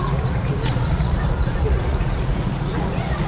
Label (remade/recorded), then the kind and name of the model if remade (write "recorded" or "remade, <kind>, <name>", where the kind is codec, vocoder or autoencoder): remade, vocoder, Vocos